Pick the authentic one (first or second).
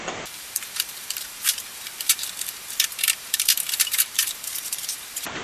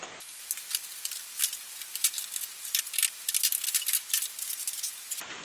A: second